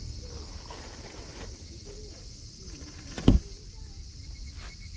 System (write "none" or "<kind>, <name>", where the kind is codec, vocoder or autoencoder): none